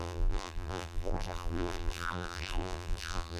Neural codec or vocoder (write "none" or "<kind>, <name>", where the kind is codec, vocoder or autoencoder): vocoder, BigVGAN v2